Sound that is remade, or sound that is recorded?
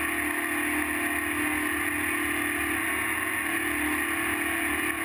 recorded